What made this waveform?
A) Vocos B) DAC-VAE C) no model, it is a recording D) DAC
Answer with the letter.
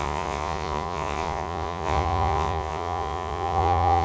A